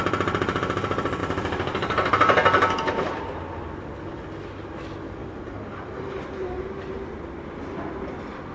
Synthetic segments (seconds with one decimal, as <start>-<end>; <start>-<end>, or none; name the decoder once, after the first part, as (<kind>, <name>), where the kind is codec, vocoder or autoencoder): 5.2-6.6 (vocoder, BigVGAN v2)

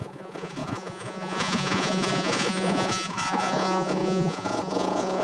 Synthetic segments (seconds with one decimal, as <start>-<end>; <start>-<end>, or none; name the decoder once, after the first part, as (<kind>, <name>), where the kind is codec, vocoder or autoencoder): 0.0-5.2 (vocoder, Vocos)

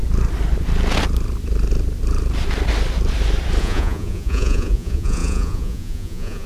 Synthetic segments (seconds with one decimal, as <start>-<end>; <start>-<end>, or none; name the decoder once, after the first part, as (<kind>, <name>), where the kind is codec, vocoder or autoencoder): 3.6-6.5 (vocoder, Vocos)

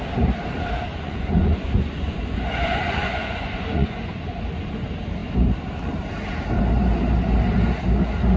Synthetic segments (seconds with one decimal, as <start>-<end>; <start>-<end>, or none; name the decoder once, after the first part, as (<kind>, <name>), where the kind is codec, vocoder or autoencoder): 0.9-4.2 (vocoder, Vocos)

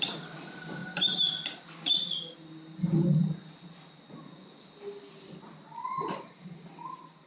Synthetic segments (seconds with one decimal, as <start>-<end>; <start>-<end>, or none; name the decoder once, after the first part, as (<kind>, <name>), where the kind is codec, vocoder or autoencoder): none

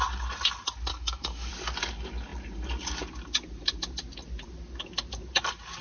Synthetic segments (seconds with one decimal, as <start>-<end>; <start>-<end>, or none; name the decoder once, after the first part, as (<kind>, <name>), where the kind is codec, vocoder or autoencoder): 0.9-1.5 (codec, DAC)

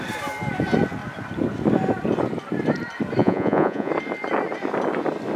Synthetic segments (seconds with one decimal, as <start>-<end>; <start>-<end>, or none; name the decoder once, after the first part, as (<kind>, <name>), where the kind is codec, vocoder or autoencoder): 3.2-3.9 (vocoder, Vocos)